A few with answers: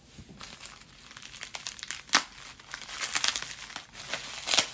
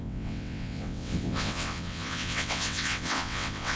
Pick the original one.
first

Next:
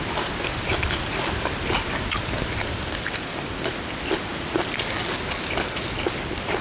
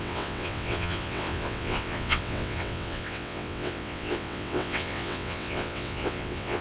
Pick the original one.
first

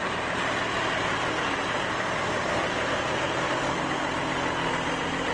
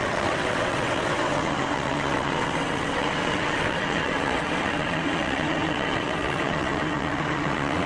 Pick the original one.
first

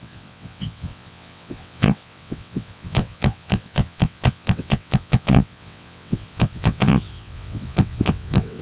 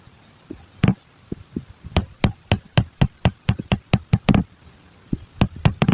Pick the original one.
second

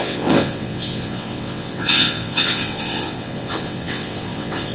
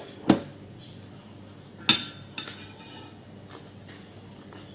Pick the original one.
second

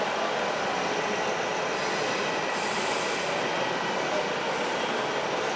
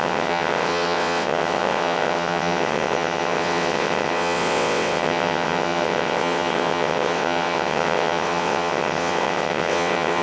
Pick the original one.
first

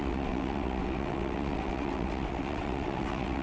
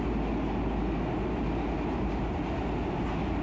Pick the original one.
second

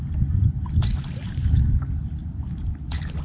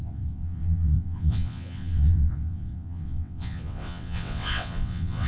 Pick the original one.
first